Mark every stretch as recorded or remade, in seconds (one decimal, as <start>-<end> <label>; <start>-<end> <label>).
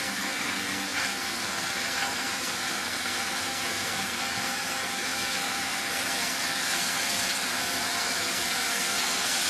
0.0-9.5 remade